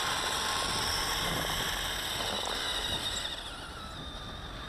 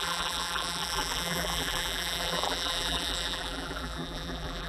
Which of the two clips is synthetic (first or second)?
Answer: second